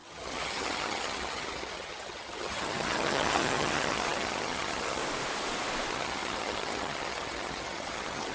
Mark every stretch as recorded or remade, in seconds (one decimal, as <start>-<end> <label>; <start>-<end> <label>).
0.0-5.0 remade; 5.0-5.9 recorded; 5.9-8.3 remade